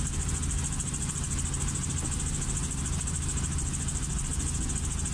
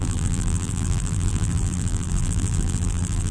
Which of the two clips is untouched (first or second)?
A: first